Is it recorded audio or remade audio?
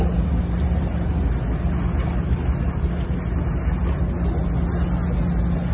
recorded